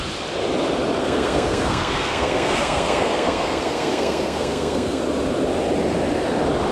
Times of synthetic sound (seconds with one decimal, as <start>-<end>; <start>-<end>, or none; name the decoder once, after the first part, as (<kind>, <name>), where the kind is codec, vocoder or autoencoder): 1.0-5.0 (codec, SNAC)